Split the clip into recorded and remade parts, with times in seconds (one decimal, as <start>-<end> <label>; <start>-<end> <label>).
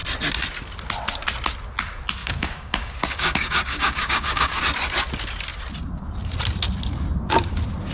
0.0-2.2 recorded; 2.2-4.6 remade; 4.6-7.9 recorded